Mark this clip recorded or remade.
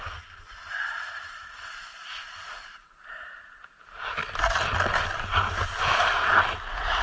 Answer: recorded